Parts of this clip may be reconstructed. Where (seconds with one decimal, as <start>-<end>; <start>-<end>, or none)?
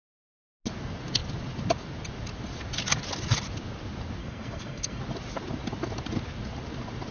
4.2-5.0